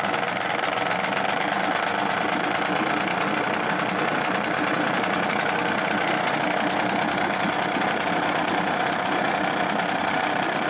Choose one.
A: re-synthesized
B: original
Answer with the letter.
B